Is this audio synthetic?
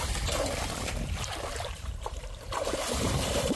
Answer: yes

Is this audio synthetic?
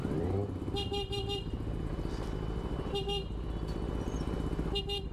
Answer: no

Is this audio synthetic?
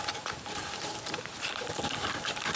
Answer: yes